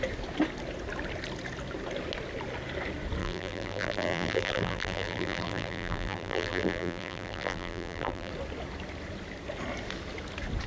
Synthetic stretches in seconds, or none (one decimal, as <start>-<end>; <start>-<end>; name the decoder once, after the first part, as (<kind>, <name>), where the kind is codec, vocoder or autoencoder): 3.2-8.3 (vocoder, BigVGAN v2)